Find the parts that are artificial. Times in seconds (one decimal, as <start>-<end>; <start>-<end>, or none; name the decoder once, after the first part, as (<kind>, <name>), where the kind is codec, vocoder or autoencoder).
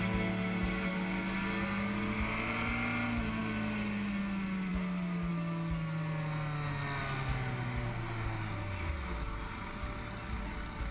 none